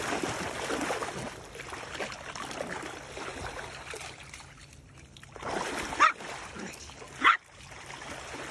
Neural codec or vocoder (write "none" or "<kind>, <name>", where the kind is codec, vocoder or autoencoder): none